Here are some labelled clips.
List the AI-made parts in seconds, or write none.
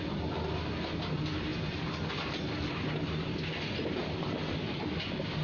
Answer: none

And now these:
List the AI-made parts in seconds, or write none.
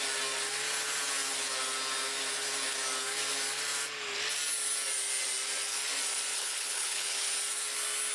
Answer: 6.3-7.3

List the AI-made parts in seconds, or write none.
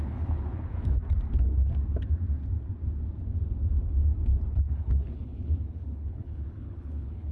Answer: 0.0-1.0; 4.7-7.3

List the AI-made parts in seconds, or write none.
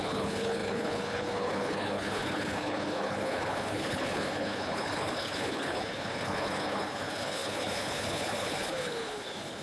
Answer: 0.0-9.6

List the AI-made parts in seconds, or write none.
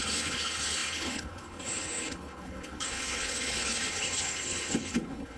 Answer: 0.0-5.4